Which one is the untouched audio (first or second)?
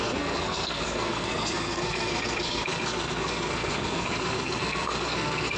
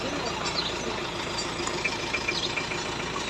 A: second